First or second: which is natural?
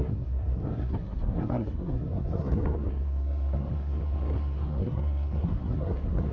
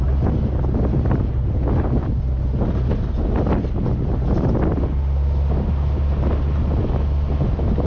second